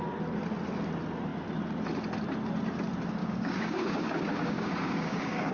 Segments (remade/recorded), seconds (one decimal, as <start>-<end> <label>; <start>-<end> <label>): 0.0-3.2 recorded; 3.2-5.5 remade